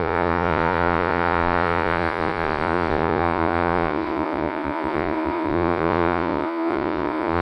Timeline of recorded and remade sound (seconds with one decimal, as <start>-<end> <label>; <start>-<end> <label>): 0.0-7.4 remade